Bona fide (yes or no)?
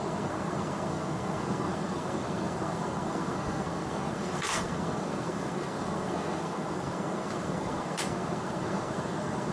no